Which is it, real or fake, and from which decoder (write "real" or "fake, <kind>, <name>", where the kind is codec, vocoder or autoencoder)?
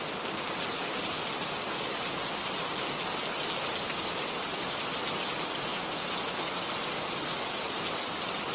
real